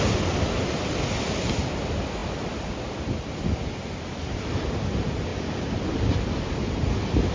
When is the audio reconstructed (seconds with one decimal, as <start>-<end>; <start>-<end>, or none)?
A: none